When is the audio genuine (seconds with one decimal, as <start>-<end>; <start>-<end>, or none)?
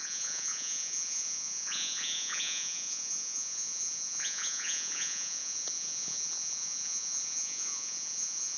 none